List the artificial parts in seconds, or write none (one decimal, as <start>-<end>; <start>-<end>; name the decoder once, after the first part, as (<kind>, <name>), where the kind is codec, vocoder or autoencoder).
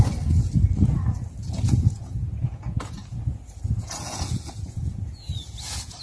1.4-3.3 (vocoder, Vocos); 3.8-6.0